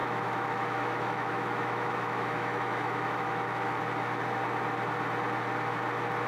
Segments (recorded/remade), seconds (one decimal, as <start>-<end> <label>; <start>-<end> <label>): 0.0-3.8 remade; 3.8-6.3 recorded